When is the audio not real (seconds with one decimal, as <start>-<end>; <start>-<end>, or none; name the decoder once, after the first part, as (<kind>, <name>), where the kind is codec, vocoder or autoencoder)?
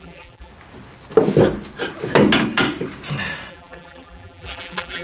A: 0.0-0.5 (vocoder, BigVGAN v2); 3.5-5.0